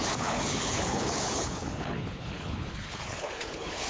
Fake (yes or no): yes